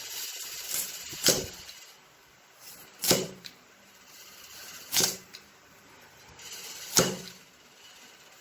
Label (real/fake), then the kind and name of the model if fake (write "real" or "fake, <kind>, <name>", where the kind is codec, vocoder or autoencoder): fake, vocoder, BigVGAN v2